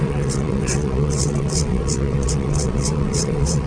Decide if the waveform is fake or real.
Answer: fake